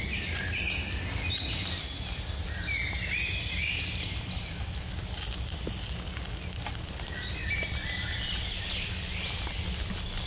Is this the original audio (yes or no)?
yes